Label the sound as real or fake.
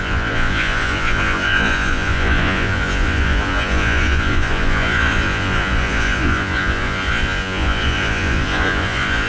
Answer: fake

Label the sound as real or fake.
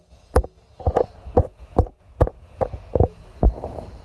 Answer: fake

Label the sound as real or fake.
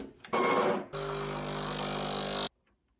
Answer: real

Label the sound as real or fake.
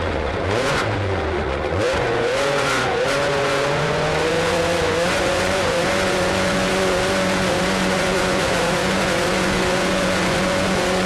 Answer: fake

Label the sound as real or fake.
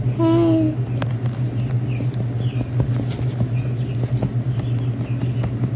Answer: real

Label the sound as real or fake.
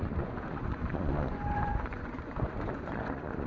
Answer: fake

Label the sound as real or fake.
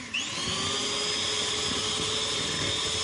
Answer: real